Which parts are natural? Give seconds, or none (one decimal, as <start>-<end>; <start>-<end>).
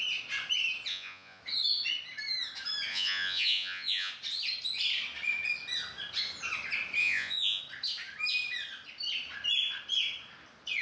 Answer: 0.0-0.9; 1.4-2.9; 4.1-7.0; 7.6-10.8